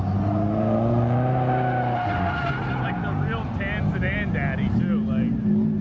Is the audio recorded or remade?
recorded